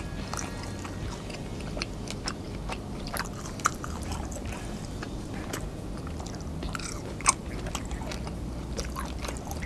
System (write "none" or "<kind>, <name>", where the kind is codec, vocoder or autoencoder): none